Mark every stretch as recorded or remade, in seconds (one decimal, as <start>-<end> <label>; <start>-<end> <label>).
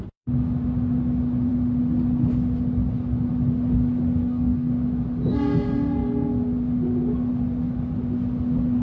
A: 0.0-4.2 recorded; 4.2-4.7 remade; 4.7-8.8 recorded